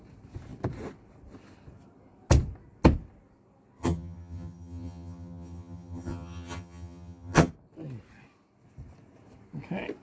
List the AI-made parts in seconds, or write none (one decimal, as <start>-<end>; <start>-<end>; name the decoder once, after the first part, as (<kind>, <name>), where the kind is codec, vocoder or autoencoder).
3.8-7.5 (vocoder, HiFi-GAN)